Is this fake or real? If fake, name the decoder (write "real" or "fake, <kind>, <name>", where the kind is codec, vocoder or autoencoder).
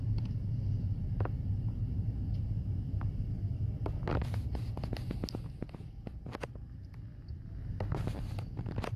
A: real